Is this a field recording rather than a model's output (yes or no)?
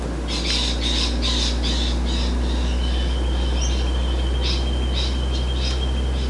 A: yes